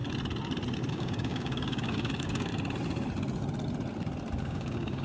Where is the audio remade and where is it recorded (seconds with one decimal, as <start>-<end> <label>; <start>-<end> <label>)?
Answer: 0.0-0.9 recorded; 0.9-2.5 remade; 2.5-4.4 recorded; 4.4-5.0 remade